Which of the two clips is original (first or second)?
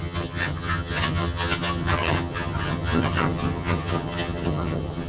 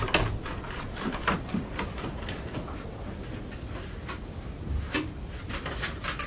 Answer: second